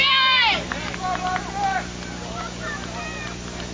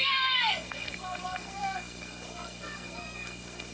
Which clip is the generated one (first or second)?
second